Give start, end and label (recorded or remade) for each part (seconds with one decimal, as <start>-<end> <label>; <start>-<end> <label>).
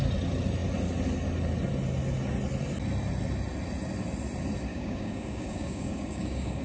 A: 0.0-4.7 recorded; 4.7-6.6 remade